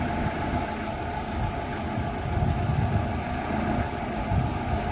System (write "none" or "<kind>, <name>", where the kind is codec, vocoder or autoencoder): none